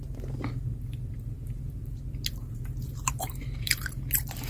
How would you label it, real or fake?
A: fake